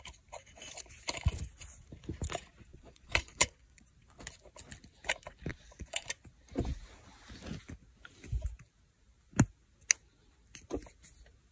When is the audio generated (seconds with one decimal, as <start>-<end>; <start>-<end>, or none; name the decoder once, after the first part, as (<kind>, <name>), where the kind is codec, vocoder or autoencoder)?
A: 2.7-3.9 (vocoder, Vocos); 5.5-6.1